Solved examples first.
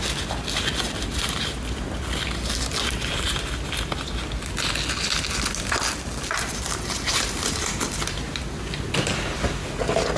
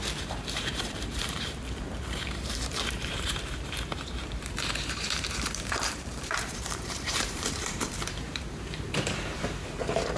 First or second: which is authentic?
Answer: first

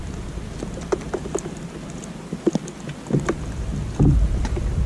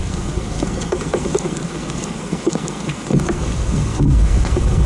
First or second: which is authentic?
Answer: first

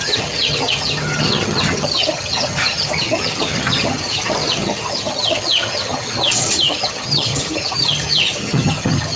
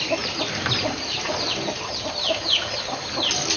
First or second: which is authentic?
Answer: second